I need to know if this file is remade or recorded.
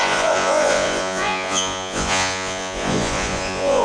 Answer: remade